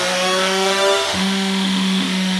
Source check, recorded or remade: remade